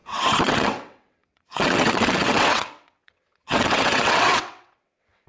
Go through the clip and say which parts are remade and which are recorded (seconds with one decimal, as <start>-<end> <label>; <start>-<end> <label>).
0.0-5.3 remade